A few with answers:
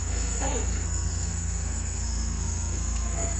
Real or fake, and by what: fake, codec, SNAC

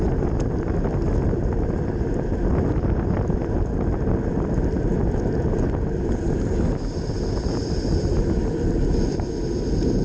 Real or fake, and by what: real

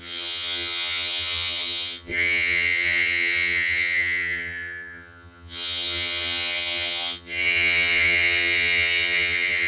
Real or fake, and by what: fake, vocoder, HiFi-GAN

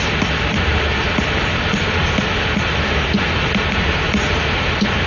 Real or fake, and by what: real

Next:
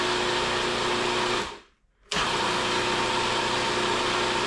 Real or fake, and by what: real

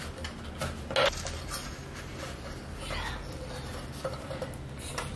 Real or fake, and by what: real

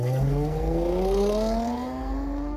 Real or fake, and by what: fake, codec, SNAC